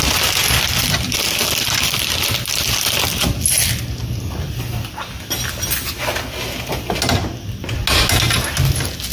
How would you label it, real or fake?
real